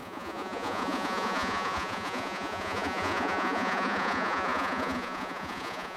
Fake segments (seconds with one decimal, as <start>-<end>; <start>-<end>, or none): 0.0-6.0